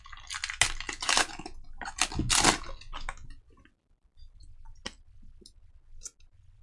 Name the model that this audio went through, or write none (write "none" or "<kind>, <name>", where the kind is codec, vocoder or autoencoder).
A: none